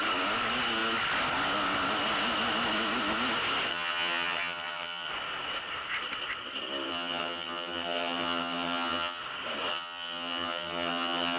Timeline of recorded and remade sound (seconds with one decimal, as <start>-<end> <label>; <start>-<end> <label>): 0.0-3.7 recorded; 3.7-5.1 remade; 5.1-6.9 recorded; 6.9-9.2 remade; 9.2-9.7 recorded; 9.7-11.4 remade